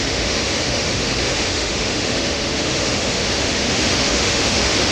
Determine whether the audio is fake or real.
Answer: fake